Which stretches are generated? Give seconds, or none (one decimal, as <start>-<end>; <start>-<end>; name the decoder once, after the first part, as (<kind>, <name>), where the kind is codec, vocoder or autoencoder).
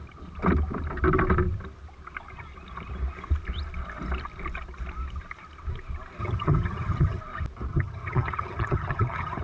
6.2-7.2 (vocoder, HiFi-GAN); 7.7-9.4